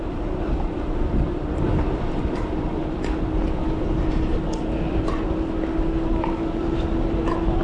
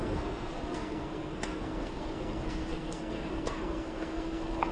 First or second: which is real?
first